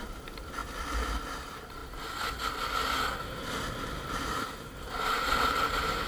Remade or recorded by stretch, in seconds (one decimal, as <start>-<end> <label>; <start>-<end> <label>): 0.0-0.6 remade; 0.6-1.3 recorded; 1.3-1.8 remade; 1.8-3.8 recorded; 3.8-6.1 remade

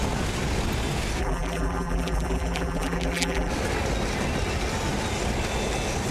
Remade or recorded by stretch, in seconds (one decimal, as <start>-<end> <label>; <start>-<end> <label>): 0.0-1.2 recorded; 1.2-3.5 remade; 3.5-6.1 recorded

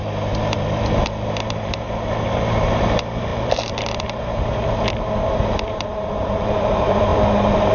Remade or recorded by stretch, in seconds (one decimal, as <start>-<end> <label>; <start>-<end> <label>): 0.0-7.7 remade